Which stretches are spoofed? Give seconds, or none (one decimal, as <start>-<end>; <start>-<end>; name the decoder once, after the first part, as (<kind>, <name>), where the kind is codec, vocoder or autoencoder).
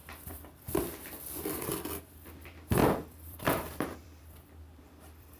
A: 2.8-5.4 (vocoder, BigVGAN v2)